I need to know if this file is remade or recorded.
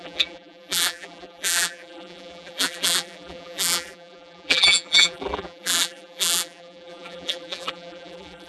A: remade